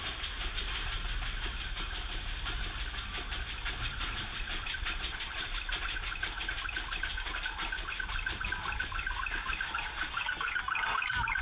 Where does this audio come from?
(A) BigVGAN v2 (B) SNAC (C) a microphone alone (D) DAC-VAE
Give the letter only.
C